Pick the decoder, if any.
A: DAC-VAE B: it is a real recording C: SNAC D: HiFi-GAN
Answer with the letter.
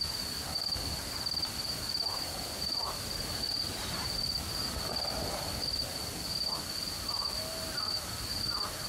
B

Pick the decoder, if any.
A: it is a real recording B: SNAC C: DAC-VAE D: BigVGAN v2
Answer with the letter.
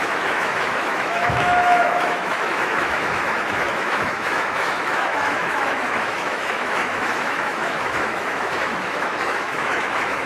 C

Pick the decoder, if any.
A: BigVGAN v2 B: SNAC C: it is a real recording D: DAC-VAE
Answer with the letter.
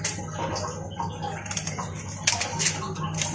C